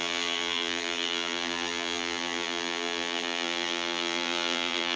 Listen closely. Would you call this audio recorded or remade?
remade